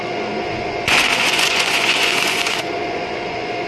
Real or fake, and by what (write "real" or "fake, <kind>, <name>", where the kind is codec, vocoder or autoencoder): fake, vocoder, Vocos